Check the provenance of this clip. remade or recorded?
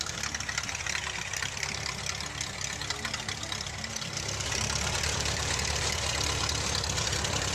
remade